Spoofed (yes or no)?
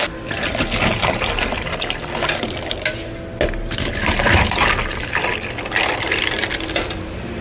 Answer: no